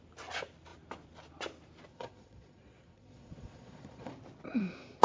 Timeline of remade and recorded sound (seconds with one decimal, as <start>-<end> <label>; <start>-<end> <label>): 0.0-1.9 recorded; 1.9-4.1 remade; 4.1-5.0 recorded